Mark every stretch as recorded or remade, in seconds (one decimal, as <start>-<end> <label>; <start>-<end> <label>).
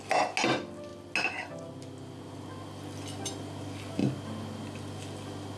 0.0-5.6 recorded